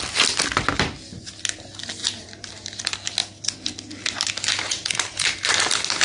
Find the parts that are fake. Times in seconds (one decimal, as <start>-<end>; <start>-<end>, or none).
2.0-2.5; 4.8-5.5

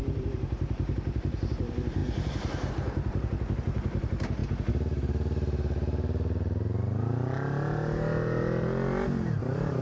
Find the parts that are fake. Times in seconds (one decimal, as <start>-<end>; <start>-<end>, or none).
0.0-2.0; 2.7-4.4; 9.4-9.8